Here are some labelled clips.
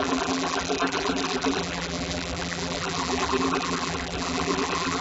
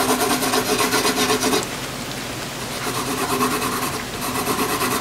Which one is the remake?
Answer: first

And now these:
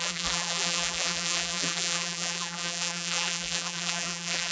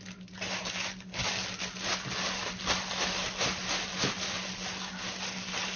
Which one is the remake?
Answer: first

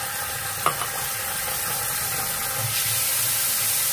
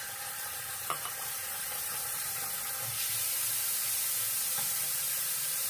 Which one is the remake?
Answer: second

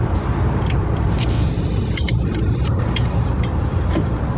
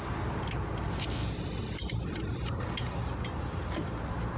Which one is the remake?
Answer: first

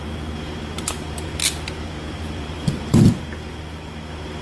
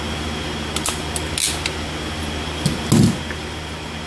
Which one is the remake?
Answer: first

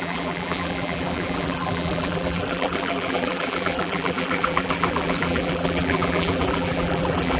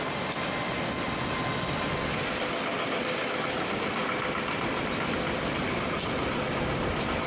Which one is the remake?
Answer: first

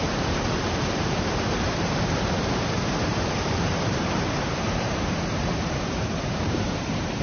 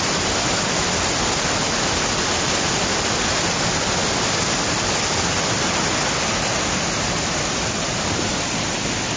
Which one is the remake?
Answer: first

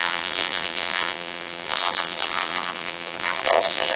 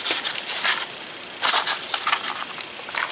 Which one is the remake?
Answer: first